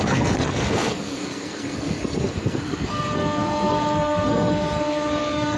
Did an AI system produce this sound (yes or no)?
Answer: yes